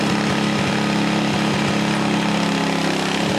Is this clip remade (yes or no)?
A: no